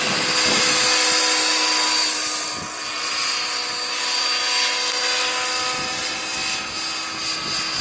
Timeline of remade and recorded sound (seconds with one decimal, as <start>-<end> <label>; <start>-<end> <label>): 0.0-7.8 recorded